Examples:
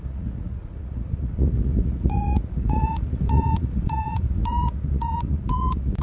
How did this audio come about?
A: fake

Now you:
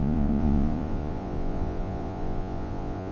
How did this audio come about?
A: fake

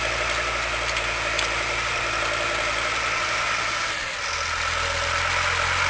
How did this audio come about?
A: real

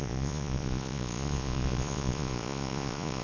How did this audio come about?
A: fake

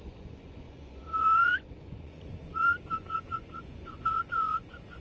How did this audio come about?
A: fake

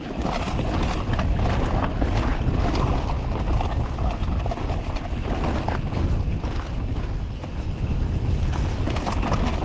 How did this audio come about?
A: real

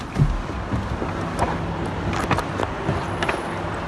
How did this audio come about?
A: real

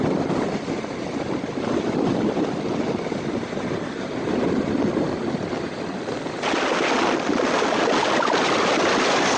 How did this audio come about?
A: real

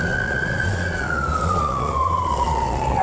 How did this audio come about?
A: fake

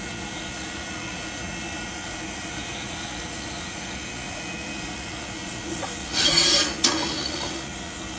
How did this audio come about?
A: fake